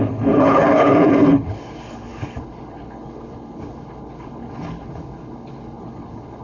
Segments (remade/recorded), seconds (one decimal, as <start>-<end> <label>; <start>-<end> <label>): 0.0-6.4 remade